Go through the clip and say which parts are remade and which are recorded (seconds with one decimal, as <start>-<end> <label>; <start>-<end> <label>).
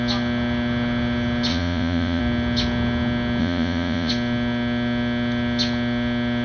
0.0-1.5 recorded; 1.5-2.2 remade; 2.2-3.4 recorded; 3.4-4.1 remade; 4.1-6.4 recorded